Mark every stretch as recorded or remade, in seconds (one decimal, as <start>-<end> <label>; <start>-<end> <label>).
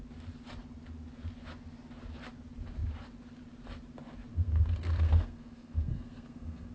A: 0.0-4.3 recorded; 4.3-6.7 remade